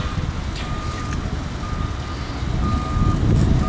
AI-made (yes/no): no